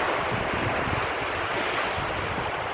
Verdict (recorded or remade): recorded